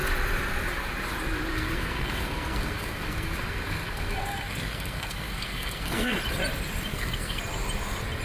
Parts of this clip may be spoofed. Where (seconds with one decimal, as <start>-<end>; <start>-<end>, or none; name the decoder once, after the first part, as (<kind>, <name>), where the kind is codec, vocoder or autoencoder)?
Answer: 1.5-6.2 (codec, SNAC); 6.9-7.4